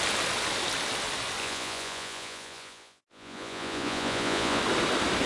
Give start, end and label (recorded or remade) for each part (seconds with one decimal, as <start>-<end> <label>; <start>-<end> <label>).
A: 0.0-1.4 recorded; 1.4-4.6 remade; 4.6-5.3 recorded